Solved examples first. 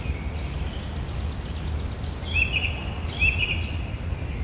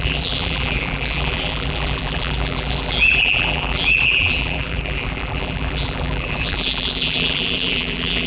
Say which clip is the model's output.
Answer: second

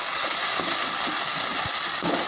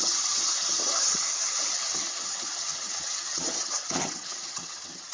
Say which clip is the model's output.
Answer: second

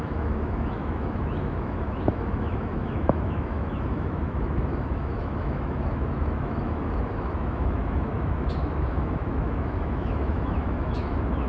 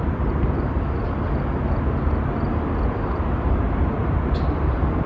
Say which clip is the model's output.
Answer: first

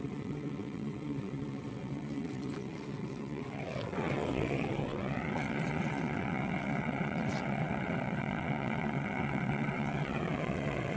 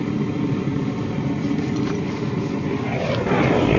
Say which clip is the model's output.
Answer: first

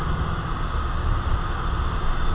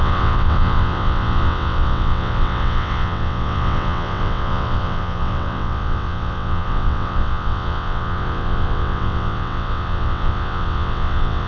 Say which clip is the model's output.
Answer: second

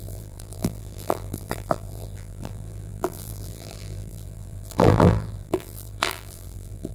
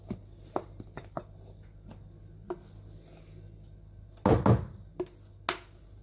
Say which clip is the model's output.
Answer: first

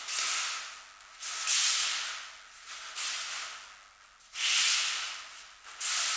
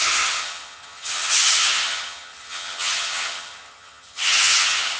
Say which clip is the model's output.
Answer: second